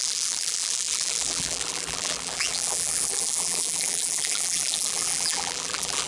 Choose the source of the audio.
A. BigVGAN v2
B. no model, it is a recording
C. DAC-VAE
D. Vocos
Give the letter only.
A